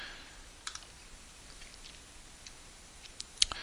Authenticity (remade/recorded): remade